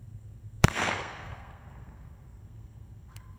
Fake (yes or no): yes